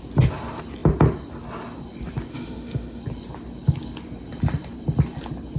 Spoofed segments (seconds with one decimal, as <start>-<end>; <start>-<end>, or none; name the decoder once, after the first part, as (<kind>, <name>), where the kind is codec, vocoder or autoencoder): 2.3-3.0 (autoencoder, DAC-VAE)